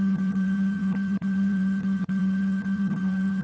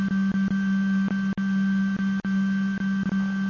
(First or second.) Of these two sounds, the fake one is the first